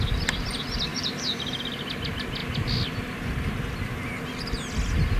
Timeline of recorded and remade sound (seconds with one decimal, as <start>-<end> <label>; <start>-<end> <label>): 0.0-0.9 recorded; 0.9-1.6 remade; 1.6-5.2 recorded